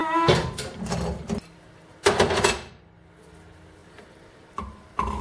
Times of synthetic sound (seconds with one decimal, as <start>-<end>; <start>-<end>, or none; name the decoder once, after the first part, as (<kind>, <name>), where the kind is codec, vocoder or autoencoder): 3.8-5.2 (vocoder, BigVGAN v2)